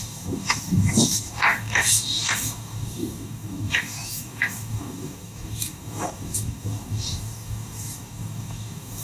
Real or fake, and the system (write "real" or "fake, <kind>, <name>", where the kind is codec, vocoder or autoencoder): fake, codec, DAC